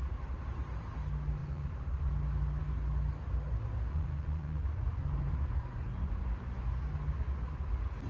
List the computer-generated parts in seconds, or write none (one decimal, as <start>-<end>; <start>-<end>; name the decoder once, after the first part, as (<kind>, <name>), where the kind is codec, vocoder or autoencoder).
1.4-2.1 (vocoder, Vocos); 3.9-6.2